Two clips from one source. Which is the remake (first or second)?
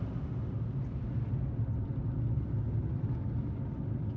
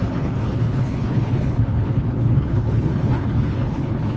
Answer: second